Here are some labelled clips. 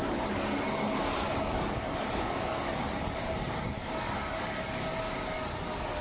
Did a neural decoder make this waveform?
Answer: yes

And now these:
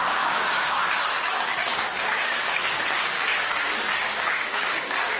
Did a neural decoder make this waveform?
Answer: yes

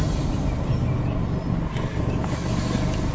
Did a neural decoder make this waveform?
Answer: no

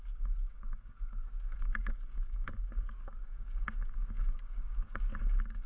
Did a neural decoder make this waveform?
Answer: yes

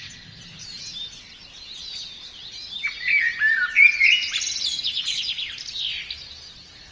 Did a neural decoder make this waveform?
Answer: no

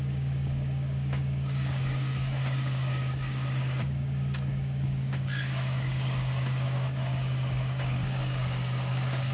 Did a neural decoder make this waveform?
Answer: yes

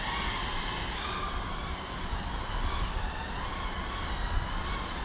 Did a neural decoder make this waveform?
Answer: no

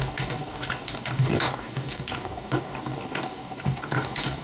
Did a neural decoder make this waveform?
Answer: yes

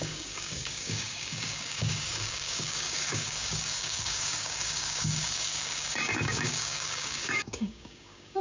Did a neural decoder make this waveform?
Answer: yes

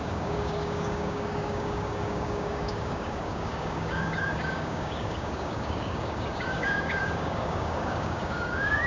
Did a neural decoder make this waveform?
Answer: yes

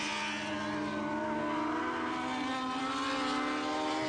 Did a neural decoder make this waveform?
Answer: no